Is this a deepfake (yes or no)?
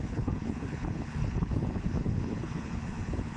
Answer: yes